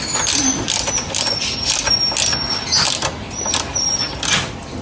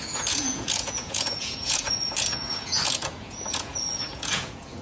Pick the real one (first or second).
first